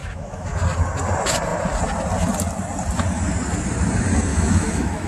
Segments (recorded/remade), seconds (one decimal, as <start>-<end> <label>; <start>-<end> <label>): 0.0-0.5 remade; 0.5-4.3 recorded; 4.3-5.1 remade